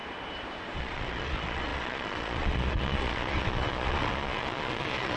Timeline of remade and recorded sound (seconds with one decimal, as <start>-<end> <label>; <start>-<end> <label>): 0.0-0.8 recorded; 0.8-5.2 remade